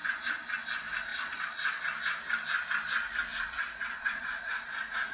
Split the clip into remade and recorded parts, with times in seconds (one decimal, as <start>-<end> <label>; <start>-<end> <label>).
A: 0.0-3.3 recorded; 3.3-5.1 remade